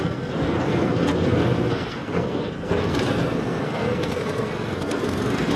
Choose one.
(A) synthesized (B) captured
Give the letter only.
A